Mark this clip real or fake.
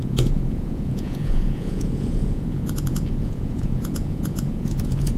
fake